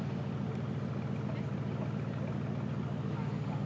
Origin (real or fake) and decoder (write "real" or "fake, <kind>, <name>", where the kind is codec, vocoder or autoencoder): real